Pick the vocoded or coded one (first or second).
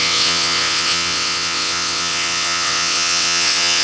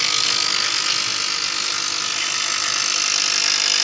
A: first